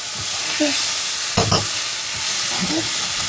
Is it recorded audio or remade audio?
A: recorded